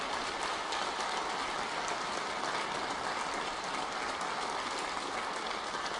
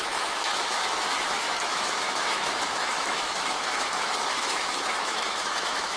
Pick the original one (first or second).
first